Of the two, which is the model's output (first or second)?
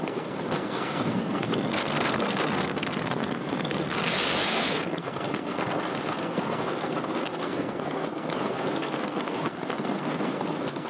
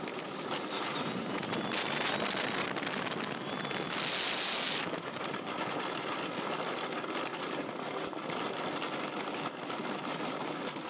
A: first